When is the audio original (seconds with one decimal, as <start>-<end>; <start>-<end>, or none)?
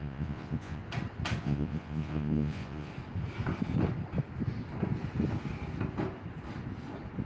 0.8-1.4; 2.9-7.3